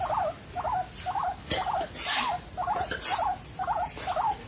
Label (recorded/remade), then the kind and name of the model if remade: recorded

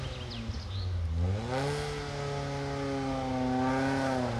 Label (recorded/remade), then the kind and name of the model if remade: recorded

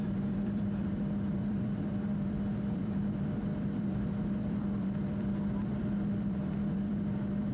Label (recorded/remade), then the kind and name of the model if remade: remade, vocoder, BigVGAN v2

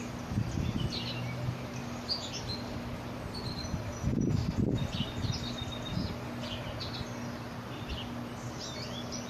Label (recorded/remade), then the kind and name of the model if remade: recorded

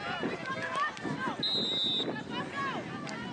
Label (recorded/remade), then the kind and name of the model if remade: recorded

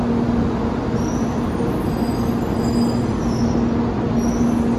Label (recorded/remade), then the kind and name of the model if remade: recorded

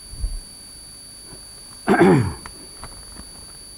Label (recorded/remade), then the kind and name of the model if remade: recorded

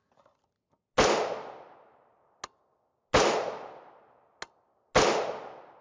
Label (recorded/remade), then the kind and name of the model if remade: recorded